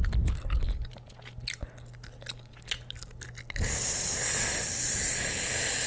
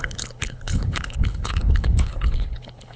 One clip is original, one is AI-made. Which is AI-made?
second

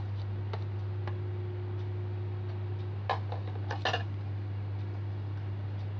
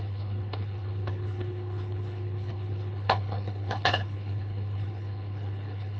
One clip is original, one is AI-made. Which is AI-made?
second